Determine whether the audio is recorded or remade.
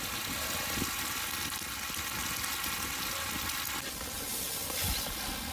recorded